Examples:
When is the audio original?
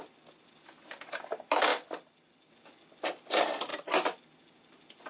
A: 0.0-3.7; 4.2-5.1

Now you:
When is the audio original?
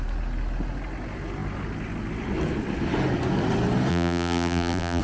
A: 0.0-3.9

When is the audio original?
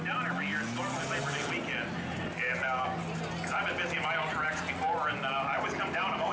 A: 0.0-6.3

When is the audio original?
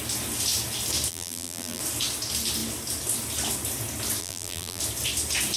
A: 0.0-1.1; 1.8-4.2; 4.8-5.6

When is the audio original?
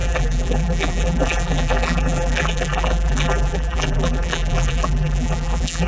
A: none